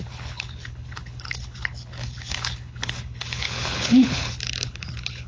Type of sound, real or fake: fake